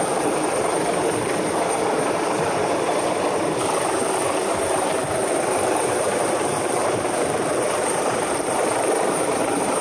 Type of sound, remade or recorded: remade